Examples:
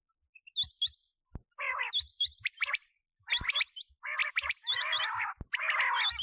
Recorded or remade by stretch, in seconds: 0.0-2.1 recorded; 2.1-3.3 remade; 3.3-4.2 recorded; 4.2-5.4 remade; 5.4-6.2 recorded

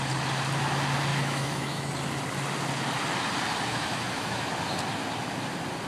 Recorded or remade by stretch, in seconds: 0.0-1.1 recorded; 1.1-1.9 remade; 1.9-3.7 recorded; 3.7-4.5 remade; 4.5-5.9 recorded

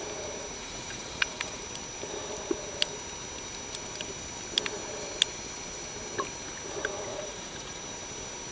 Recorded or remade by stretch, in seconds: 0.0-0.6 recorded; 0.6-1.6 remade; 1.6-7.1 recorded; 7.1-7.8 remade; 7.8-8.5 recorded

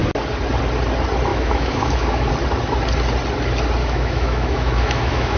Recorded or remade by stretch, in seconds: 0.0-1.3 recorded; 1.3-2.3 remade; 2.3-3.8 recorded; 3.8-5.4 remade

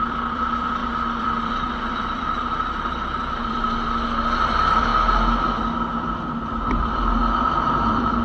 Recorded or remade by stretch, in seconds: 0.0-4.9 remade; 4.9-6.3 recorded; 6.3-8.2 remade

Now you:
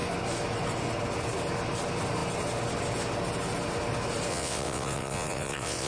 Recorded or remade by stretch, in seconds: 0.0-4.3 recorded; 4.3-5.9 remade